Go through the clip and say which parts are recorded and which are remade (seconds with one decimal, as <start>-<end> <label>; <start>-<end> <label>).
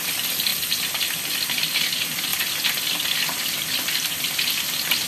0.0-2.3 recorded; 2.3-4.6 remade; 4.6-5.1 recorded